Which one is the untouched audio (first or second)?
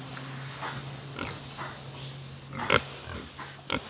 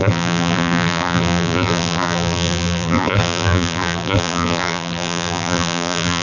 first